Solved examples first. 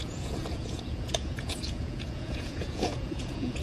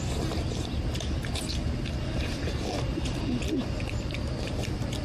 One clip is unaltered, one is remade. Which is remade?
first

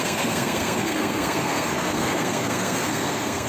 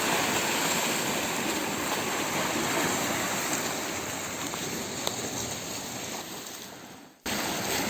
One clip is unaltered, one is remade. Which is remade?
first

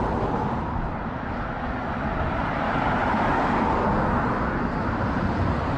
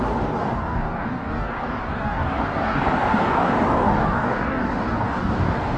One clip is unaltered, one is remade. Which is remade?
second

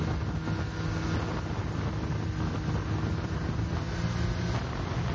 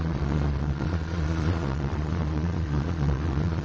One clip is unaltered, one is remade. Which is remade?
second